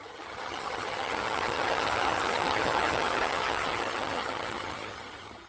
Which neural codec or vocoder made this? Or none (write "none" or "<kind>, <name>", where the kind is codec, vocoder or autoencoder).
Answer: vocoder, HiFi-GAN